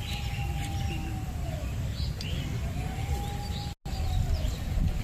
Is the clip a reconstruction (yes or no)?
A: no